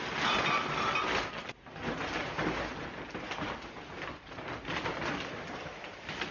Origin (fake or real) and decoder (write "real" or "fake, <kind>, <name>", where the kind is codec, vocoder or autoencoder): real